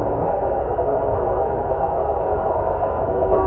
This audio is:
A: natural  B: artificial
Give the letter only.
B